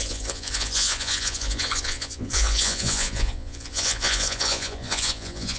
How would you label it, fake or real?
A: fake